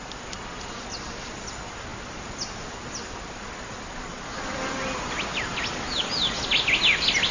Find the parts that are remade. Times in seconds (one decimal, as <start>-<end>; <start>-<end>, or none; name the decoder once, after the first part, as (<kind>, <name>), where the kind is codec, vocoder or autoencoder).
none